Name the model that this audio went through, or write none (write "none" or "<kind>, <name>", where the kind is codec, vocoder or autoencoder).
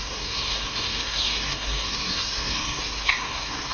codec, SNAC